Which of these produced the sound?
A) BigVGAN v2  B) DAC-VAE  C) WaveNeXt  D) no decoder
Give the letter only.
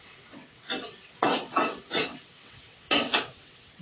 C